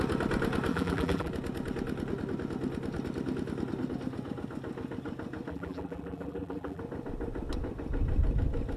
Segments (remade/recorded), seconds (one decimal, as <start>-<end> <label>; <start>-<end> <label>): 0.0-0.7 recorded; 0.7-1.3 remade; 1.3-5.5 recorded; 5.5-6.8 remade; 6.8-8.8 recorded